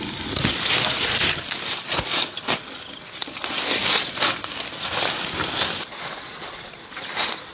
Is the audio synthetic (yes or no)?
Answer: no